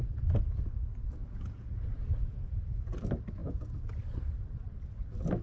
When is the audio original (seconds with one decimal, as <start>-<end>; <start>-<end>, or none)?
0.0-1.2; 2.5-5.4